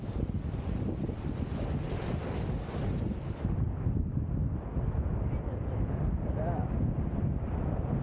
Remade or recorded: recorded